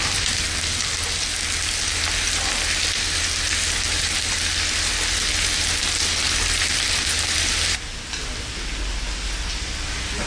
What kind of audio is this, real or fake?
real